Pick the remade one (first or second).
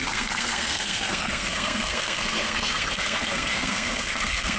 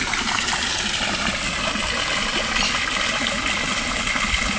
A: first